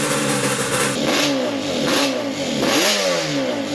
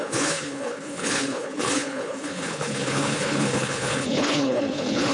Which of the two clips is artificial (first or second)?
second